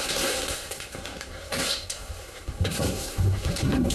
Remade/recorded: remade